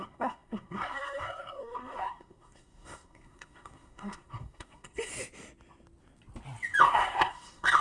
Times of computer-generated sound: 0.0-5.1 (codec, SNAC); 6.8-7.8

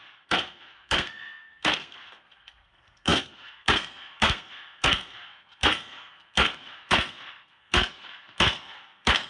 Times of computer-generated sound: 0.0-9.3 (codec, SNAC)

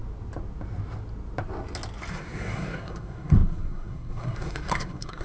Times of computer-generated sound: 2.1-5.2 (codec, SNAC)